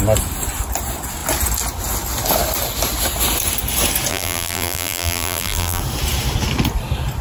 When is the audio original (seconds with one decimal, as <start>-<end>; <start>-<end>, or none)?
0.0-4.1; 5.8-7.2